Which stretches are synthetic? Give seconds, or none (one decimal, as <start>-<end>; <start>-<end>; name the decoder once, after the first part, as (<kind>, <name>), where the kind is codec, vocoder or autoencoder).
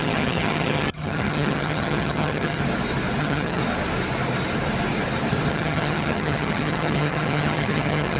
0.0-2.6 (vocoder, HiFi-GAN); 3.2-3.6; 5.5-8.2